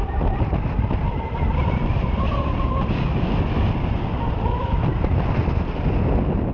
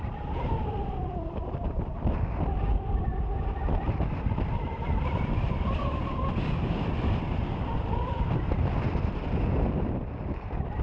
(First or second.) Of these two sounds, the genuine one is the first